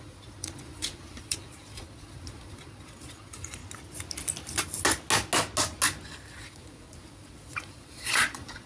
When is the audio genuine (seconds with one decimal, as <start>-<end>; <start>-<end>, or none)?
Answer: 3.6-6.3